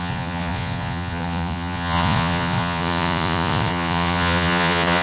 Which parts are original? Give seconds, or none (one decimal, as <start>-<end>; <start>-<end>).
none